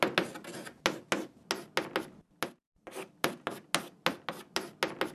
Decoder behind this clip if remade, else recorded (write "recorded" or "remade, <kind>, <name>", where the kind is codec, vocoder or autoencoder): recorded